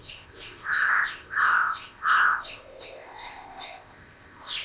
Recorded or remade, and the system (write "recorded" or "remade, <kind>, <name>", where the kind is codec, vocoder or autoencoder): remade, codec, ZipCodec